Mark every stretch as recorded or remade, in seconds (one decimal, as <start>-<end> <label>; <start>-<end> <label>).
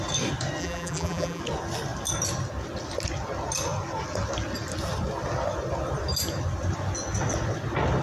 0.0-0.6 recorded; 0.6-1.4 remade; 1.4-8.0 recorded